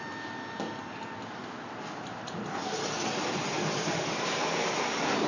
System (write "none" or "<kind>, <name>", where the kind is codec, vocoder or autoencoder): none